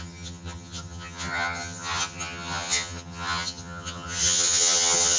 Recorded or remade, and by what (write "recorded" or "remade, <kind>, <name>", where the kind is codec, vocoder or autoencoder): remade, vocoder, HiFi-GAN